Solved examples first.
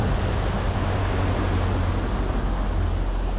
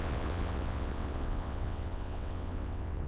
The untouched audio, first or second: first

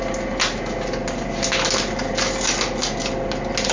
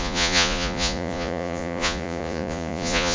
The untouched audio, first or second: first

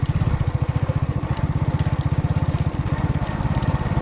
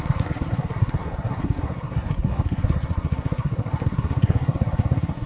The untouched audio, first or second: first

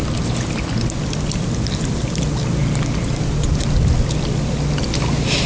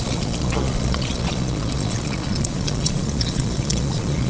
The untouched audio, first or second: first